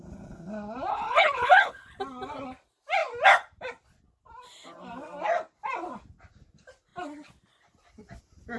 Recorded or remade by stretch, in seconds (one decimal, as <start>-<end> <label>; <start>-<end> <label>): 0.0-0.9 recorded; 0.9-2.0 remade; 2.0-8.6 recorded